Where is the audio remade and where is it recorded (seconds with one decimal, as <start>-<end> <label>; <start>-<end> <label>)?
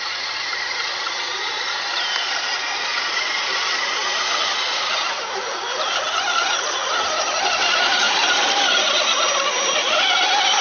0.0-10.6 recorded